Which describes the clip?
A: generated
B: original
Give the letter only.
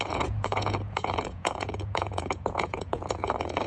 A